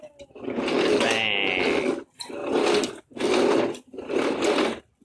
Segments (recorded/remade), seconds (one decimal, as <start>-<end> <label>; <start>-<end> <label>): 0.0-5.0 recorded